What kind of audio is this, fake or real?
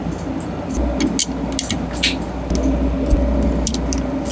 real